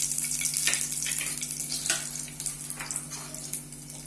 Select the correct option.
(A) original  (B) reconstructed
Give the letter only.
A